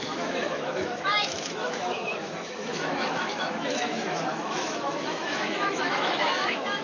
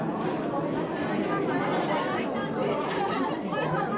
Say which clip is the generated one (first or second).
first